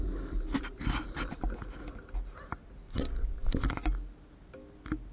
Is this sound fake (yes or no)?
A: no